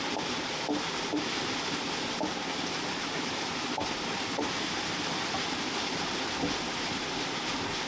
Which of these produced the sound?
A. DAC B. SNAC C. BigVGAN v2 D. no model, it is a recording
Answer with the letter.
D